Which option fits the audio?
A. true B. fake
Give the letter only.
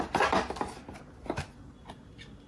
A